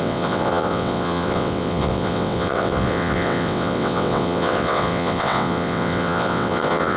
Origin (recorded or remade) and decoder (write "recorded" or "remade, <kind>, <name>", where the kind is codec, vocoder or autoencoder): remade, vocoder, WaveNeXt